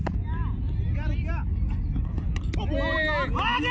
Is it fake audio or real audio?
real